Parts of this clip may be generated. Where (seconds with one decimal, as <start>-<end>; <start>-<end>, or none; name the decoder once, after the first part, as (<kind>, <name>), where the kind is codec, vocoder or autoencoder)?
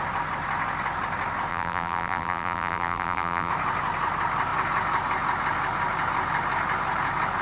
1.5-3.5 (vocoder, BigVGAN v2)